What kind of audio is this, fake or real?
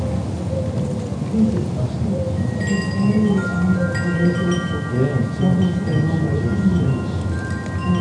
real